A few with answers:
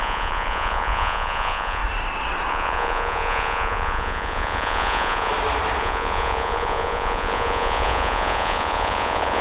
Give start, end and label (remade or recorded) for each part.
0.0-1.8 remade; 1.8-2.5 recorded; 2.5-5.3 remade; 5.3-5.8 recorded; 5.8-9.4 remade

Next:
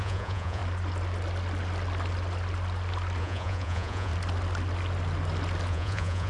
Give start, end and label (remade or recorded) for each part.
0.0-0.6 remade; 0.6-3.2 recorded; 3.2-4.1 remade; 4.1-5.7 recorded; 5.7-6.3 remade